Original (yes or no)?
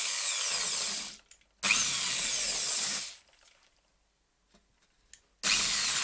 yes